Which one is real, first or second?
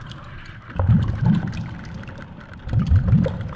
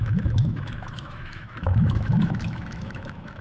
first